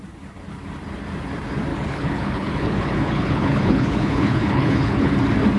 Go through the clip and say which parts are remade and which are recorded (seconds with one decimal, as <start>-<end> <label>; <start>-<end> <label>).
0.0-1.7 recorded; 1.7-5.1 remade; 5.1-5.6 recorded